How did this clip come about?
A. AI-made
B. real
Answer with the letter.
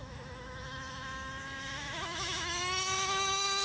A